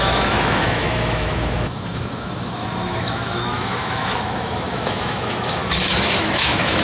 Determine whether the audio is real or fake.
fake